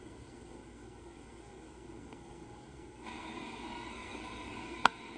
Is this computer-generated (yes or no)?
yes